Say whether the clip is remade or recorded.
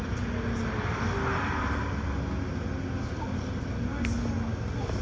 recorded